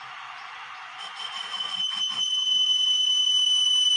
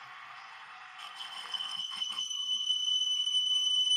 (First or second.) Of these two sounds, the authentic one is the first